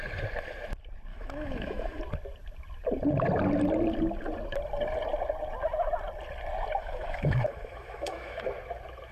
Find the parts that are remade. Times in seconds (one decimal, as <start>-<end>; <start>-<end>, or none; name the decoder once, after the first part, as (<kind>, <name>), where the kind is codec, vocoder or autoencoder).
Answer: 1.1-2.0 (autoencoder, DAC-VAE); 6.8-8.4